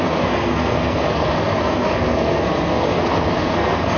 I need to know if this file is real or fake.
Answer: fake